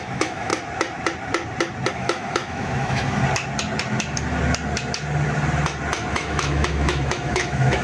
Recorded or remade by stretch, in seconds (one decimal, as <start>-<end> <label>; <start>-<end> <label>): 0.0-0.5 remade; 0.5-1.9 recorded; 1.9-3.2 remade; 3.2-6.1 recorded; 6.1-7.8 remade